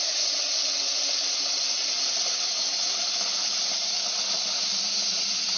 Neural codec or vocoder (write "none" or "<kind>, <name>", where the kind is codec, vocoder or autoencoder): none